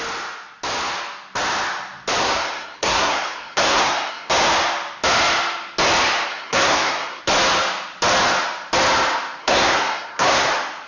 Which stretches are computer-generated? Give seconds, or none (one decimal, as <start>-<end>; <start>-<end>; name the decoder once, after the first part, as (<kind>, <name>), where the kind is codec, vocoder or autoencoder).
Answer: 2.2-4.3 (codec, SNAC); 6.3-7.2; 9.4-10.5